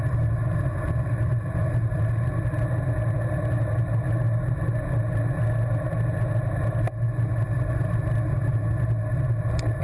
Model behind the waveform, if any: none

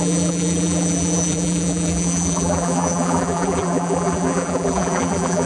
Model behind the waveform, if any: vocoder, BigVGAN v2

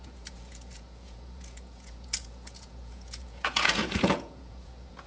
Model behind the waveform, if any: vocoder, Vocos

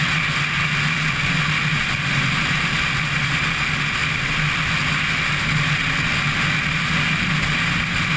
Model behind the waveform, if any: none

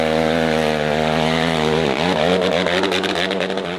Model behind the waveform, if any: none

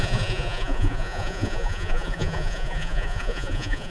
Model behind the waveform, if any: vocoder, Vocos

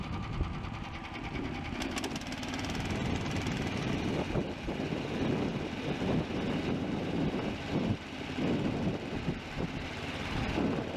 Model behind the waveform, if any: none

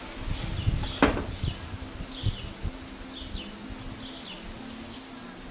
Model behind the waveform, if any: none